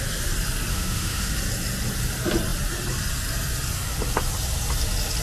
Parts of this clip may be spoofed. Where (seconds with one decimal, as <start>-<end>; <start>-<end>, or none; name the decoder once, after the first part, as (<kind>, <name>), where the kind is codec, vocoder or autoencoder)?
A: 0.7-1.3 (autoencoder, DAC-VAE)